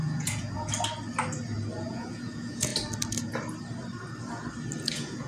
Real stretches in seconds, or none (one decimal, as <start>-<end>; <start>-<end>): 0.7-1.9; 2.7-4.8